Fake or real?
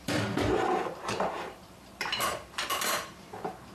fake